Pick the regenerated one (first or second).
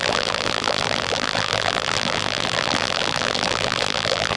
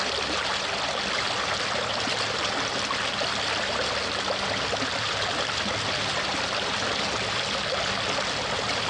first